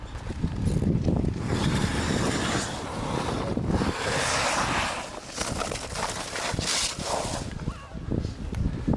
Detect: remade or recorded recorded